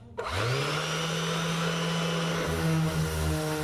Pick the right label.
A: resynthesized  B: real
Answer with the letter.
B